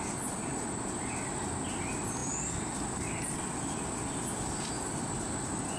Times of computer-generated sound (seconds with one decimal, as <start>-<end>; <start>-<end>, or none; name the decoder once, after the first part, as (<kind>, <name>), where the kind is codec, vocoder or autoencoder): none